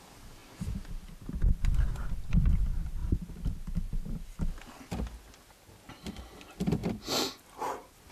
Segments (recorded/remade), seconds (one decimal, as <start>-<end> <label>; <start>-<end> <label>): 0.0-8.1 recorded